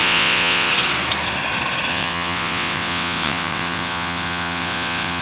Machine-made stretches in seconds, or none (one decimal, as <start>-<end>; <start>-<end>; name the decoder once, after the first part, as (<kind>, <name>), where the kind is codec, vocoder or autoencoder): 0.0-0.7 (vocoder, WaveNeXt); 1.9-5.2